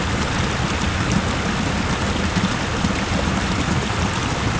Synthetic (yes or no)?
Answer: no